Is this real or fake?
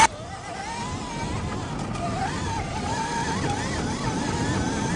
real